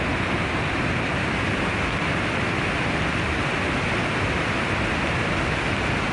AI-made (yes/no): no